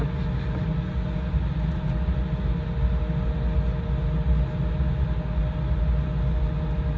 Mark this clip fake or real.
real